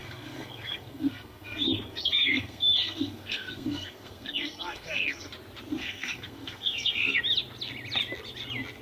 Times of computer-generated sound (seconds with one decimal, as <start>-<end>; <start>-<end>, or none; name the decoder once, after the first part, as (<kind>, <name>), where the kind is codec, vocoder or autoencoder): 0.0-5.3 (codec, SNAC); 5.8-7.2